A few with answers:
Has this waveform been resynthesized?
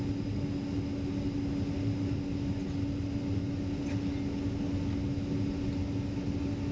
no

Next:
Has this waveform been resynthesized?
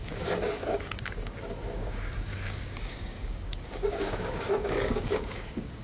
yes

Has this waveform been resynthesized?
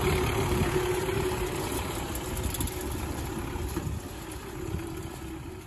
no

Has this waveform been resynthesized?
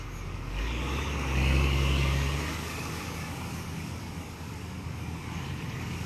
yes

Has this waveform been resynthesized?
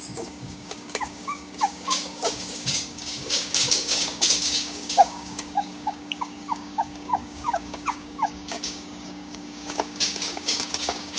yes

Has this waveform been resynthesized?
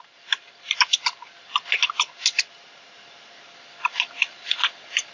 no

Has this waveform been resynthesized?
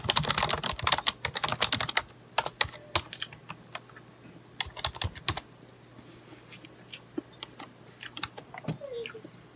no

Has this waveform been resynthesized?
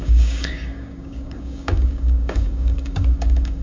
yes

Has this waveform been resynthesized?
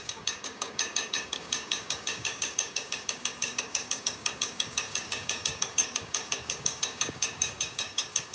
yes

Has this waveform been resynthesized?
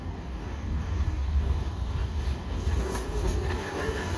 yes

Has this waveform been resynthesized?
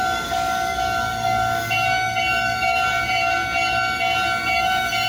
yes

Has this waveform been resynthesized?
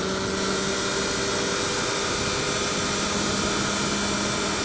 no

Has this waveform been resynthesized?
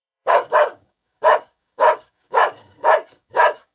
yes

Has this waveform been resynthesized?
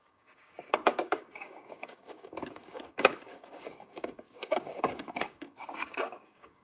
yes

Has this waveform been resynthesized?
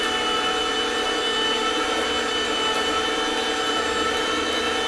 no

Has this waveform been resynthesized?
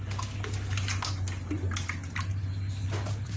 no